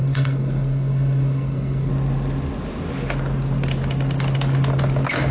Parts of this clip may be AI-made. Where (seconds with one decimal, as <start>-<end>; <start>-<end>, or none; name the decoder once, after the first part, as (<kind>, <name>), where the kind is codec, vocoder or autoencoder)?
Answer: 0.0-1.9 (codec, SNAC)